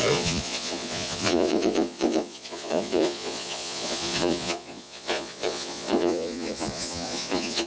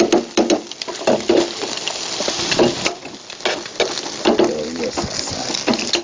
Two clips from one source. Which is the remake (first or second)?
first